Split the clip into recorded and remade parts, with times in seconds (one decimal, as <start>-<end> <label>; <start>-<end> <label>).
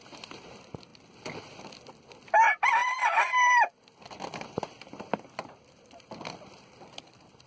0.0-0.9 recorded; 0.9-1.6 remade; 1.6-2.8 recorded; 2.8-7.5 remade